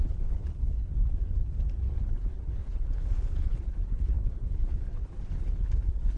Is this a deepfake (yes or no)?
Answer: yes